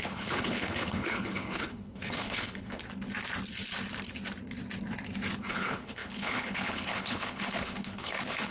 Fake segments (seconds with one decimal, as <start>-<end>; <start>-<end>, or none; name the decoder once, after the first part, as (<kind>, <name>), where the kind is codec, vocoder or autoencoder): 0.0-2.8 (codec, HILCodec); 5.5-8.5

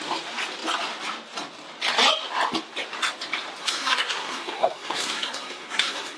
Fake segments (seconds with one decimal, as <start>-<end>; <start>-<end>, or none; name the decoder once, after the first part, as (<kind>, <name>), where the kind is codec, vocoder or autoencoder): 3.6-6.2 (codec, SNAC)

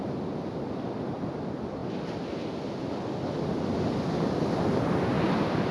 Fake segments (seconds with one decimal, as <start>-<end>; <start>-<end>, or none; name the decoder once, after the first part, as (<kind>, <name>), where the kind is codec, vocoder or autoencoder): none

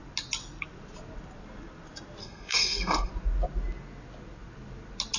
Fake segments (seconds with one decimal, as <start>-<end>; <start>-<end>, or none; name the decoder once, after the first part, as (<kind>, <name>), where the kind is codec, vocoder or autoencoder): 2.2-3.1 (codec, SNAC)

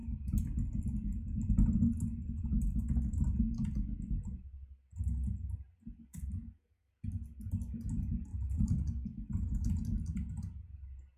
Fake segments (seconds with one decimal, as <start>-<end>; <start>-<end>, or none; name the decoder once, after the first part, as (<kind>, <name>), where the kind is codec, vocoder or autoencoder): 6.1-6.9 (codec, DAC); 8.3-9.7

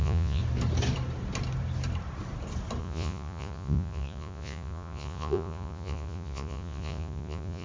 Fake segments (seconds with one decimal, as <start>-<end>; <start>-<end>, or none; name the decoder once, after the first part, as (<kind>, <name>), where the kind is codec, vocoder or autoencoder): 0.0-0.4 (vocoder, Vocos); 2.8-7.6